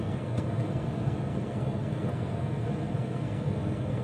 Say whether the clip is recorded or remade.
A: remade